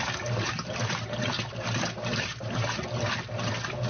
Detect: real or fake real